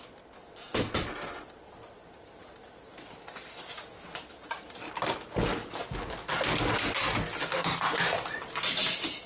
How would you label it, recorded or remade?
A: recorded